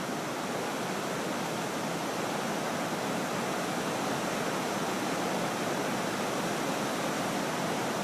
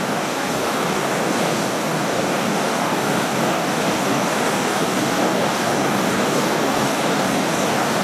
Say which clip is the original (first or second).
first